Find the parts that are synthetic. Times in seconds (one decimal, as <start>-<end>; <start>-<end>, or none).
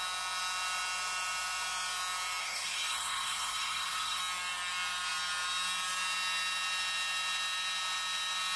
2.4-4.2